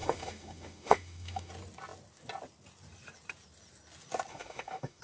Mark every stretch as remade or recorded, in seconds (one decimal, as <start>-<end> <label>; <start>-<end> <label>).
0.0-1.5 remade; 1.5-4.3 recorded; 4.3-5.0 remade